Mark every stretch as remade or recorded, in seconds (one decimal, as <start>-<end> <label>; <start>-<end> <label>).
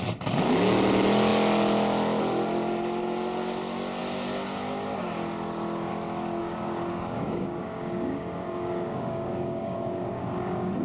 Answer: 0.0-6.4 recorded; 6.4-10.8 remade